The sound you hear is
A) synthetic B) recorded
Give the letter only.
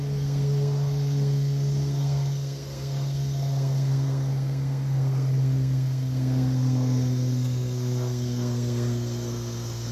A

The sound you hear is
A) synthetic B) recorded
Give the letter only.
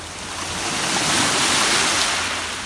B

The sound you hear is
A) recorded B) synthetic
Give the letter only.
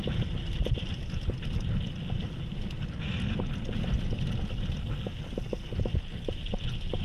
A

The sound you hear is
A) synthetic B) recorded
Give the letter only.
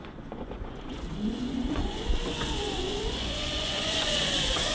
A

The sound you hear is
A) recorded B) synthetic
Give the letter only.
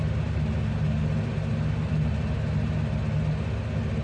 A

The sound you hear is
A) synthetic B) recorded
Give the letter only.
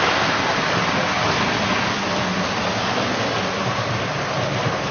B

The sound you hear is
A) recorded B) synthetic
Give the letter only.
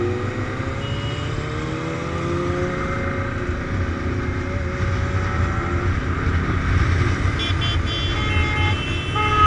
A